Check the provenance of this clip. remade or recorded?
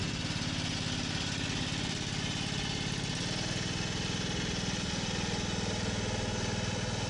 recorded